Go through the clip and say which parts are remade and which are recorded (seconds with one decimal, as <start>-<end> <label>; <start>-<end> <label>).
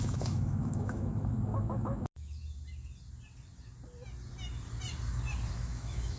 0.0-2.4 remade; 2.4-5.5 recorded; 5.5-6.2 remade